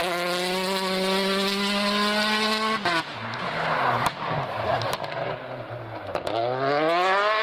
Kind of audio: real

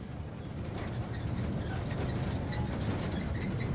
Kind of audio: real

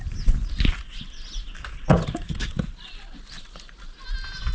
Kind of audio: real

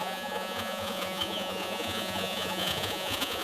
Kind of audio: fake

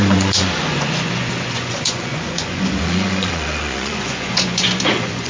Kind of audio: fake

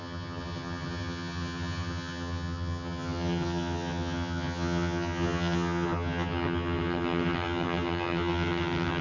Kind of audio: fake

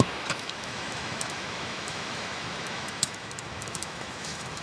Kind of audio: fake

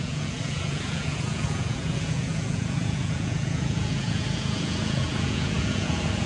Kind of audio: fake